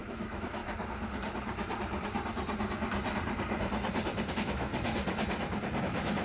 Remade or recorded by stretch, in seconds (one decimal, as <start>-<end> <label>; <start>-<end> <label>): 0.0-0.6 remade; 0.6-4.3 recorded; 4.3-4.7 remade; 4.7-5.8 recorded; 5.8-6.2 remade